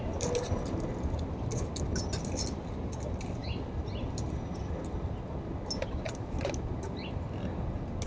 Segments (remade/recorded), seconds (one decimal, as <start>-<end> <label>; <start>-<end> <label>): 0.0-8.1 recorded